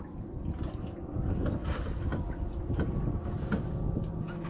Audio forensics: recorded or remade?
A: recorded